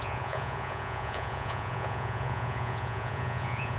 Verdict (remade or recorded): remade